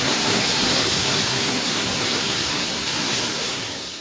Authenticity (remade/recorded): remade